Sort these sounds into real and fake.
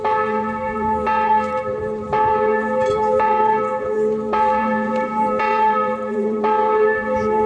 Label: fake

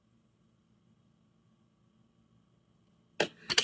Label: real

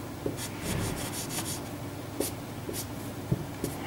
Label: real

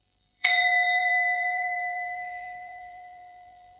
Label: fake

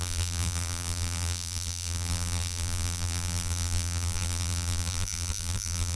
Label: fake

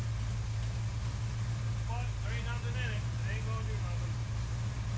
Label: real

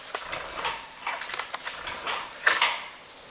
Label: real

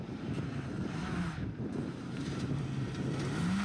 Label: fake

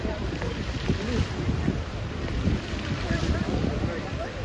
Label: fake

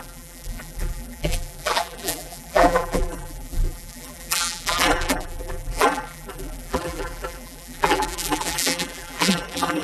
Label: fake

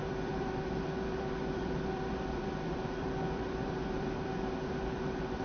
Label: fake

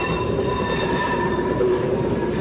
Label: fake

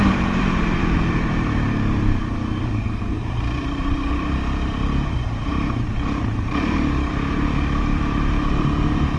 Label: fake